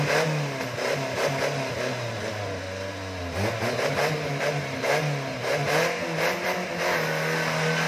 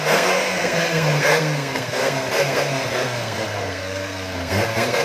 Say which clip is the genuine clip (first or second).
first